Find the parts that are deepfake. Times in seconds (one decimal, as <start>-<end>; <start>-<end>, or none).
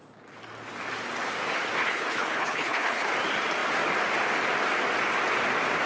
1.8-3.1